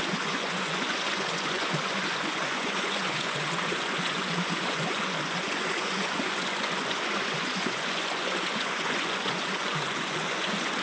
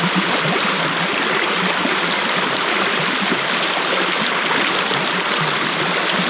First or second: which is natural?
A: second